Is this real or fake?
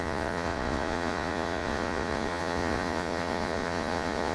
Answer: fake